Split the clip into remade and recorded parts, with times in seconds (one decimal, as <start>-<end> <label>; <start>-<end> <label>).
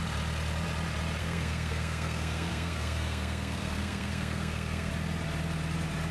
0.0-1.2 recorded; 1.2-4.9 remade; 4.9-6.1 recorded